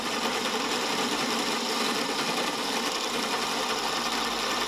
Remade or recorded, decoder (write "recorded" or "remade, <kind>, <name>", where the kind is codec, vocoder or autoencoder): recorded